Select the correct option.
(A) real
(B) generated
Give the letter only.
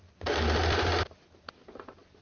A